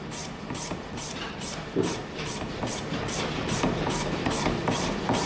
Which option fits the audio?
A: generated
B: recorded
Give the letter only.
A